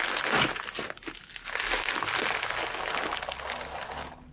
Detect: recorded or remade recorded